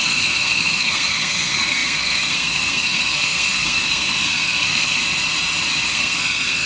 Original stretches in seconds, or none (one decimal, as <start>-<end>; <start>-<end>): 5.0-5.9

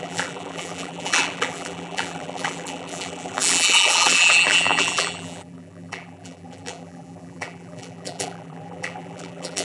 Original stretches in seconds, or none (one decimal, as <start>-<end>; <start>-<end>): none

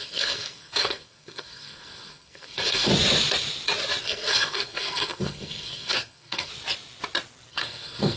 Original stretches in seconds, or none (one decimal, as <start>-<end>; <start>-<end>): 2.9-4.0; 6.5-7.5

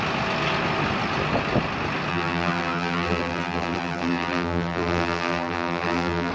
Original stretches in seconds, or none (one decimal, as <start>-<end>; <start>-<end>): 0.0-2.1

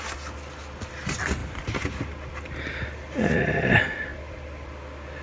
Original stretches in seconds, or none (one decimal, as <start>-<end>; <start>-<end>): 0.0-5.2

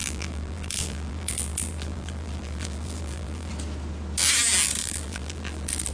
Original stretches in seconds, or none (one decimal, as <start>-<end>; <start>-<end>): 3.5-4.8